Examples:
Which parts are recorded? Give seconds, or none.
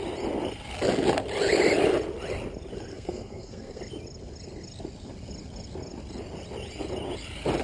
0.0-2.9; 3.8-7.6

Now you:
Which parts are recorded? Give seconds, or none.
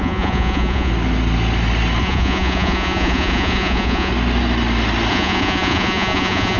0.9-2.0; 4.1-5.1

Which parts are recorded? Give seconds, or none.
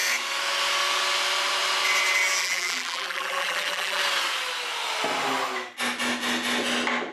0.0-2.4; 4.0-7.1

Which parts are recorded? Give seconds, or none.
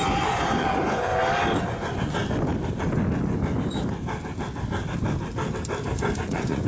1.1-1.6; 2.2-6.2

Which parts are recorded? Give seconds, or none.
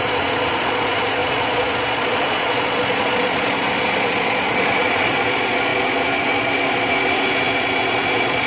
none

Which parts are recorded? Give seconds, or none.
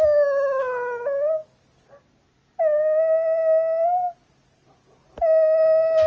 0.0-6.1